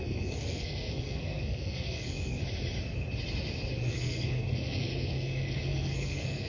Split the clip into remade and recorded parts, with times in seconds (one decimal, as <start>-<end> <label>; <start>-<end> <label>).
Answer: 0.0-2.4 remade; 2.4-3.9 recorded; 3.9-6.5 remade